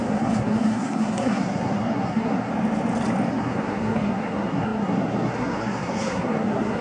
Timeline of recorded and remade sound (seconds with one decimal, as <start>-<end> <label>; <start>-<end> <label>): 0.0-2.5 remade; 2.5-3.3 recorded; 3.3-6.8 remade